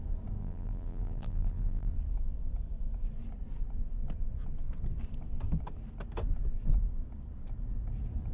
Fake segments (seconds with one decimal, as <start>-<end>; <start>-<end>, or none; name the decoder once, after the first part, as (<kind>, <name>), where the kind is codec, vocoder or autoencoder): 0.4-1.9 (vocoder, BigVGAN v2)